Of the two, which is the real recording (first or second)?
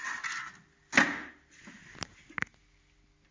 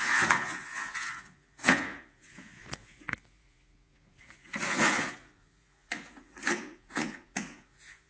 first